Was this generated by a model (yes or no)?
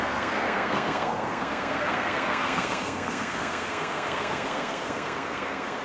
yes